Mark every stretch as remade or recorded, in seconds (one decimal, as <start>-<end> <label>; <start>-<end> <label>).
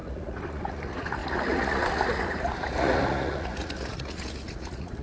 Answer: 0.0-5.0 remade